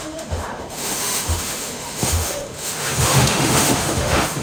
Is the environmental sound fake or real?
fake